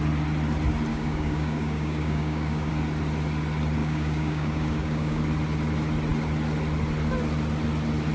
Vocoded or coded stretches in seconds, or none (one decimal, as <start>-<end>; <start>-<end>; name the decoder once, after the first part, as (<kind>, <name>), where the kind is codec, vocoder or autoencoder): 0.9-2.7 (codec, DAC); 3.8-5.2